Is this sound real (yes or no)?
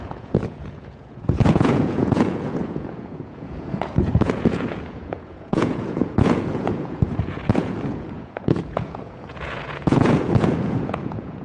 no